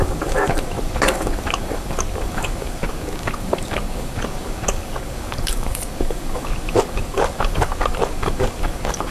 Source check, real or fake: fake